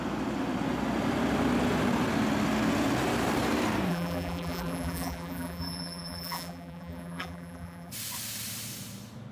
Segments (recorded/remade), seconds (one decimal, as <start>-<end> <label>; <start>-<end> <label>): 0.0-3.9 recorded; 3.9-7.9 remade; 7.9-9.3 recorded